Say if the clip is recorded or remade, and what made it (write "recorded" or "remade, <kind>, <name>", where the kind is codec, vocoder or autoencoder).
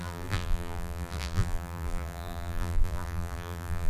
remade, vocoder, BigVGAN v2